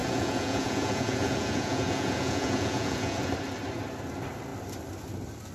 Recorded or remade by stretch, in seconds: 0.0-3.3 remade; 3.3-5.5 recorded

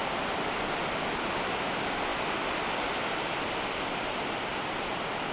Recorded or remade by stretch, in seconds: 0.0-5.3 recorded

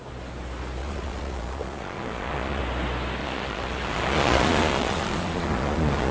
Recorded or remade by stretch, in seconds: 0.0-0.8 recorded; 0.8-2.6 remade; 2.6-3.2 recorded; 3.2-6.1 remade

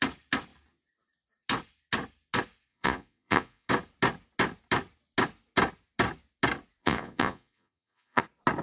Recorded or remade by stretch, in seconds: 0.0-2.7 recorded; 2.7-3.7 remade; 3.7-6.8 recorded; 6.8-8.2 remade; 8.2-8.6 recorded

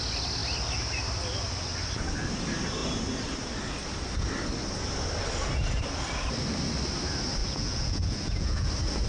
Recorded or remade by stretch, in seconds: 0.0-7.4 recorded; 7.4-8.7 remade; 8.7-9.1 recorded

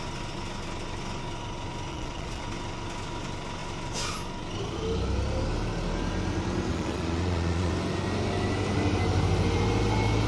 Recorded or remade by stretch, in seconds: 0.0-1.9 recorded; 1.9-2.4 remade; 2.4-6.7 recorded; 6.7-7.7 remade; 7.7-10.3 recorded

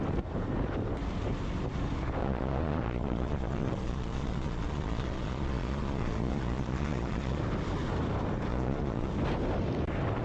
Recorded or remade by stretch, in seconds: 0.0-2.2 recorded; 2.2-7.4 remade; 7.4-8.5 recorded; 8.5-9.1 remade; 9.1-10.2 recorded

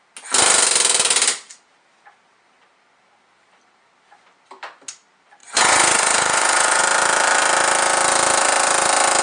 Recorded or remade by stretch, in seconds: 0.0-5.4 recorded; 5.4-6.8 remade; 6.8-9.2 recorded